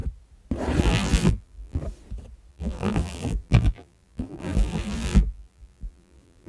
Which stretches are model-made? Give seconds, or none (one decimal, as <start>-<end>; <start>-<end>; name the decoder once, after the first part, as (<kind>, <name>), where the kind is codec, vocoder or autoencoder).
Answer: 0.8-1.8 (vocoder, BigVGAN v2); 2.5-6.5